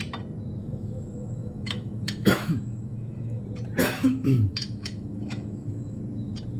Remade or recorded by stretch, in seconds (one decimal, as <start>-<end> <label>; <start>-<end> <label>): 0.0-0.6 recorded; 0.6-3.4 remade; 3.4-3.8 recorded; 3.8-6.0 remade; 6.0-6.6 recorded